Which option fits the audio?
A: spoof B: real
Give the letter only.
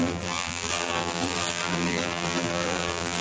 A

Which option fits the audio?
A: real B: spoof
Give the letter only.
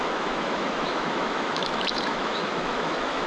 B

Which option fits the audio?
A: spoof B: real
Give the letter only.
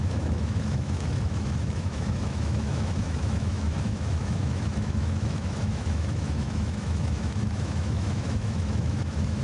A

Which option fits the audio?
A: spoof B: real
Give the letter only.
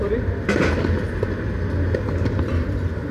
B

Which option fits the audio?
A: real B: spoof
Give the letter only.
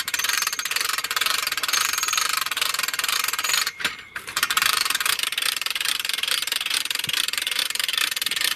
B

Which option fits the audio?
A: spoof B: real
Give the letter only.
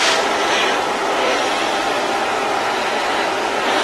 B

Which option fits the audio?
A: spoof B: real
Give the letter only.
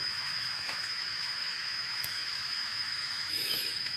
A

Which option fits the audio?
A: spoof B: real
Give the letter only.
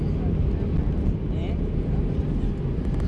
B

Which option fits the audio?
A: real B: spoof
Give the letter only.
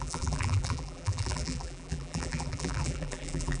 B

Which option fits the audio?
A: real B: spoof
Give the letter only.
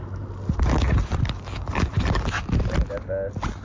A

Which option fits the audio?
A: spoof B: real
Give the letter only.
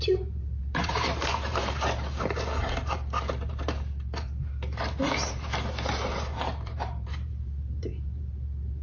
A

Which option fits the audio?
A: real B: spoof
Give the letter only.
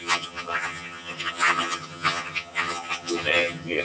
B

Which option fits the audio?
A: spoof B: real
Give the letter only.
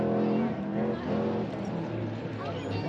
B